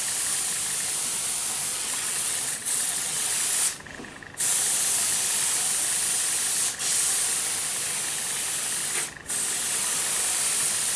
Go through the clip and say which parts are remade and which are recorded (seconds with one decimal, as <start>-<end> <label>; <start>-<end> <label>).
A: 0.0-1.7 recorded; 1.7-3.3 remade; 3.3-11.0 recorded